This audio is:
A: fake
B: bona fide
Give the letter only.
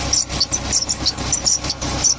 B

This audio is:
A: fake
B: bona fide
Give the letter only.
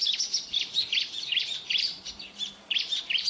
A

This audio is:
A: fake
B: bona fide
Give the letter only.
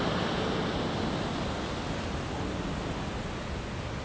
B